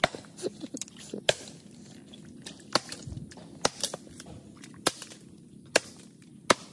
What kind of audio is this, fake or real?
real